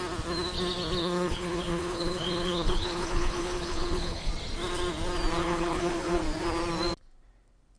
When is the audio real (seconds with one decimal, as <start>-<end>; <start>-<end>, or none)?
0.0-1.0; 4.3-5.4; 6.2-7.8